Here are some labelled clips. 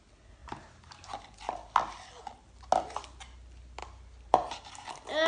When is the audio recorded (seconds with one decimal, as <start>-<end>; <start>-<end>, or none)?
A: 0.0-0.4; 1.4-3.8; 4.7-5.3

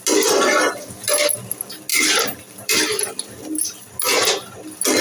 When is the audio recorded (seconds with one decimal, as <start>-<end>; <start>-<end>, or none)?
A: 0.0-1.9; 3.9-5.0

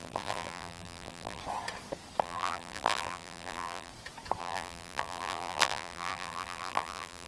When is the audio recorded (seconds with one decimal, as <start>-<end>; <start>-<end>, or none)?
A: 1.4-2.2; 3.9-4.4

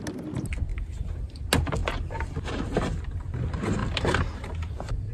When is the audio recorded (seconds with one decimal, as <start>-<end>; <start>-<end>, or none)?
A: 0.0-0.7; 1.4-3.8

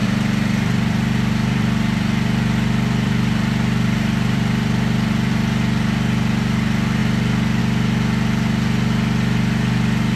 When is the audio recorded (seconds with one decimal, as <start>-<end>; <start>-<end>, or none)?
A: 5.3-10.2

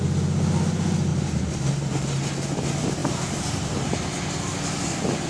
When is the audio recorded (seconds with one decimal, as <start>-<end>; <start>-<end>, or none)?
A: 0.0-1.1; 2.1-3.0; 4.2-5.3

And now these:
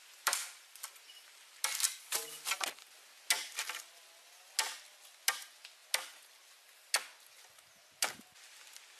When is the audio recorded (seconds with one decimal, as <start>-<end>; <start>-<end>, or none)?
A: 0.0-9.0

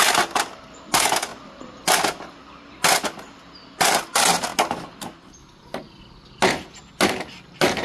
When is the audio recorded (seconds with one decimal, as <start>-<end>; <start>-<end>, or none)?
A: 0.0-7.8